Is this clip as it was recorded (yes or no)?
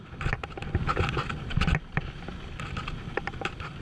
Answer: yes